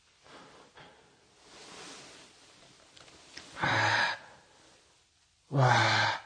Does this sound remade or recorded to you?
recorded